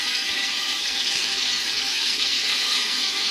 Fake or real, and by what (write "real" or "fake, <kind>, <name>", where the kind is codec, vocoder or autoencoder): fake, codec, SNAC